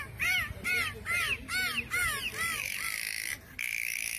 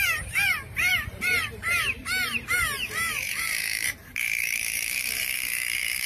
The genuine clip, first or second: first